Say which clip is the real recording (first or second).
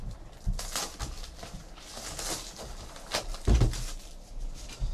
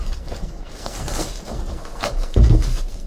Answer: first